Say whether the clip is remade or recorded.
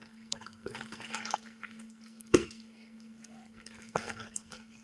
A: remade